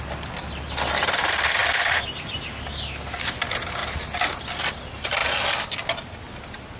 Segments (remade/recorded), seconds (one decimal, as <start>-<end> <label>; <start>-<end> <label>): 0.0-6.8 recorded